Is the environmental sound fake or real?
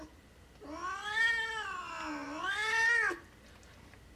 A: real